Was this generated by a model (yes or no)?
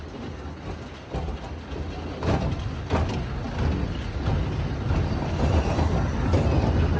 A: no